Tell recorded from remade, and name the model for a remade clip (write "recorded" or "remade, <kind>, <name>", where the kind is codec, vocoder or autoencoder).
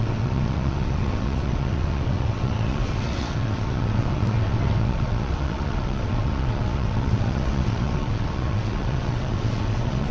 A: remade, vocoder, WaveNeXt